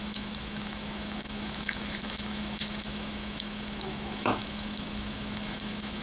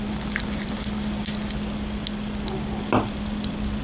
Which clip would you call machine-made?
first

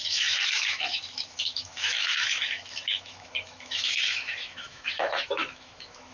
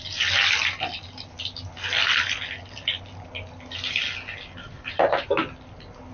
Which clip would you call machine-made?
first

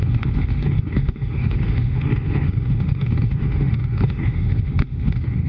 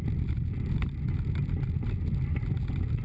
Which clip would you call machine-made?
first